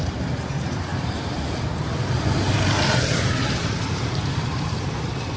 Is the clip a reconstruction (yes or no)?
yes